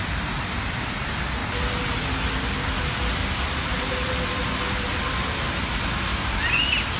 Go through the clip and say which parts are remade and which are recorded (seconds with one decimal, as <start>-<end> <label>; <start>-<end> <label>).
0.0-7.0 recorded